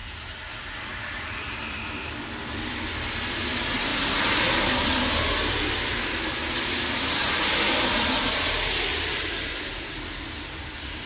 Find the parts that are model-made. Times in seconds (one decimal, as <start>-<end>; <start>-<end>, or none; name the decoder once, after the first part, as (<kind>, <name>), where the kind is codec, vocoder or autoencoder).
0.8-3.9 (vocoder, BigVGAN v2); 5.5-11.1